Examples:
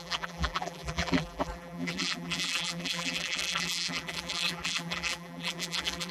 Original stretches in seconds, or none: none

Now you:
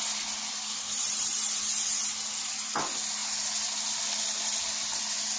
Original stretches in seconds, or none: 0.0-3.2; 4.6-5.4

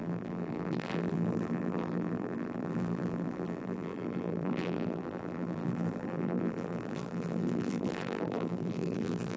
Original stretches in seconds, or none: none

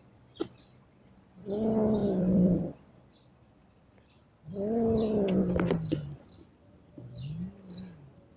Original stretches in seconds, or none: 0.0-2.0; 2.6-8.4